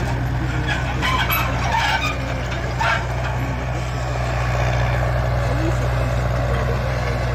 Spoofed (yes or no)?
no